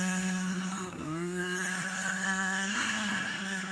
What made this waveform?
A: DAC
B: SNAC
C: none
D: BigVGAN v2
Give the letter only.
B